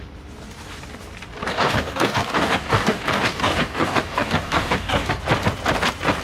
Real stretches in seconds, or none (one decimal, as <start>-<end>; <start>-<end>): 0.0-1.5; 5.2-6.2